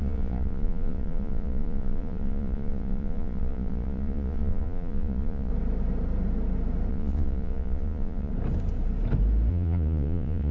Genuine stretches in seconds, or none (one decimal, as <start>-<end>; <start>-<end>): 5.5-6.9; 8.3-9.5